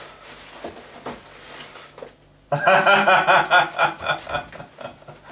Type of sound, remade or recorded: recorded